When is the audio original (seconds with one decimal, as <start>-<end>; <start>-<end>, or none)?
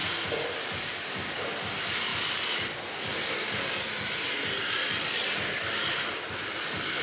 0.0-7.0